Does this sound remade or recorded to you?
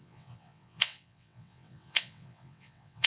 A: remade